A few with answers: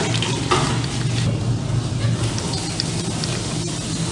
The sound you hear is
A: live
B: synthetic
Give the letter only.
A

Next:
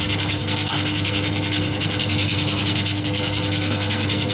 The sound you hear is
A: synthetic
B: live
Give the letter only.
A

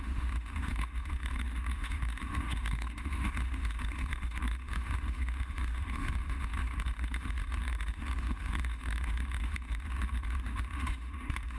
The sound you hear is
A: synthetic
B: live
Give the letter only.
A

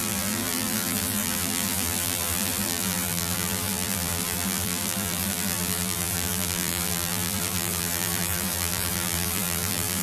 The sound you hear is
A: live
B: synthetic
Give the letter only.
B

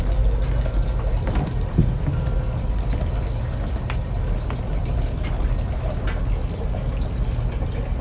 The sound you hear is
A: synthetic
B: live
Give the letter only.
B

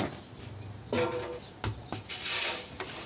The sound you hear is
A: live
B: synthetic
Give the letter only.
A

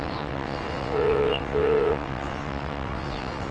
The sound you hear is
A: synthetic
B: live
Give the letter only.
A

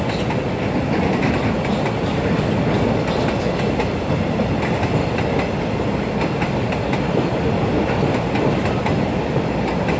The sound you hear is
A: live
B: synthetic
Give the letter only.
A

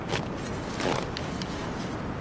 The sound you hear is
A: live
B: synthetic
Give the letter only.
A